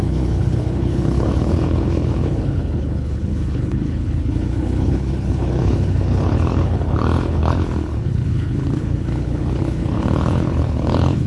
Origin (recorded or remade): remade